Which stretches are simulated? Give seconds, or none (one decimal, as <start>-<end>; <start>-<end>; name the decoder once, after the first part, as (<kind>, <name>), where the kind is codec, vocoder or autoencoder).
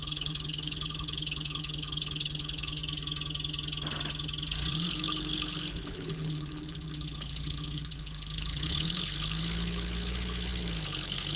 0.0-2.8 (codec, HILCodec); 4.7-11.4